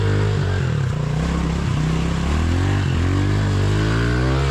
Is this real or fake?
real